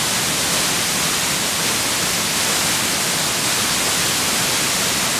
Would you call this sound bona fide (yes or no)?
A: yes